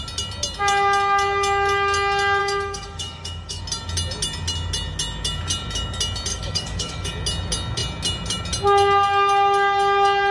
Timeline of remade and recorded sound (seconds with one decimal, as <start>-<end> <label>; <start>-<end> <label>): 0.0-2.4 recorded; 2.4-3.6 remade; 3.6-6.3 recorded; 6.3-7.1 remade; 7.1-10.3 recorded